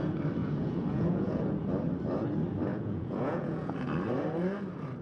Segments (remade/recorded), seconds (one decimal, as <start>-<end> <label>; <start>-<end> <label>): 0.0-0.4 recorded; 0.4-1.4 remade; 1.4-2.7 recorded; 2.7-3.9 remade; 3.9-5.0 recorded